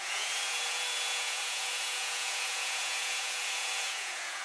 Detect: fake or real fake